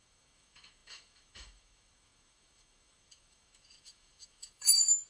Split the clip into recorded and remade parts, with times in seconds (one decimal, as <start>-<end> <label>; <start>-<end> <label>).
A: 0.0-5.1 remade